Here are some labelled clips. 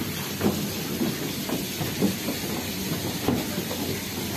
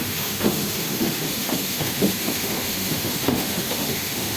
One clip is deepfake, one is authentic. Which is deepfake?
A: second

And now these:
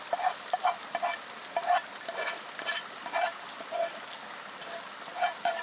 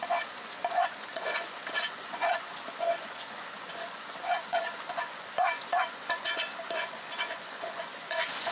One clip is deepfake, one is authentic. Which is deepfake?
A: second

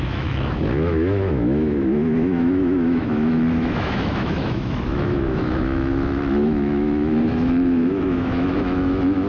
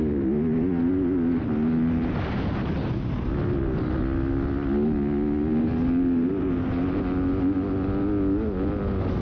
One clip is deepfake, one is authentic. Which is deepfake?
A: first